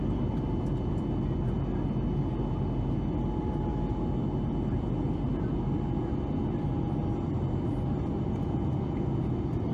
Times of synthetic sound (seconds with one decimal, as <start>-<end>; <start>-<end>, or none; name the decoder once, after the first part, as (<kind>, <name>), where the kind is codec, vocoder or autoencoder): none